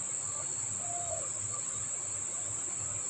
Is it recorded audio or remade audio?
recorded